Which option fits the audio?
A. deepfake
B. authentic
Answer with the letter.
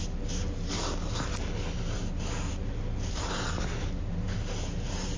B